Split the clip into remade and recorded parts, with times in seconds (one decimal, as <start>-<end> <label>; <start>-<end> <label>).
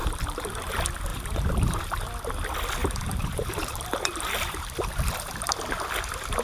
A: 0.0-0.6 remade; 0.6-1.1 recorded; 1.1-2.1 remade; 2.1-2.8 recorded; 2.8-4.7 remade; 4.7-6.4 recorded